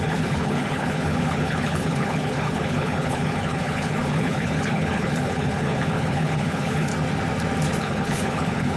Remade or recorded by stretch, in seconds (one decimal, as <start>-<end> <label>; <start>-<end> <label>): 0.0-6.9 remade; 6.9-7.8 recorded; 7.8-8.8 remade